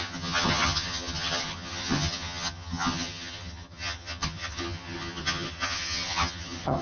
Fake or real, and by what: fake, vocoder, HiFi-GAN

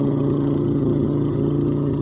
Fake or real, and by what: fake, vocoder, HiFi-GAN